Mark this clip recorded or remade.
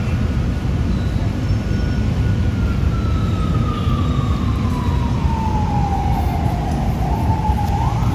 recorded